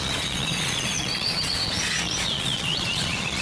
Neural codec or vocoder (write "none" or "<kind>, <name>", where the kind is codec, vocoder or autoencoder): vocoder, Vocos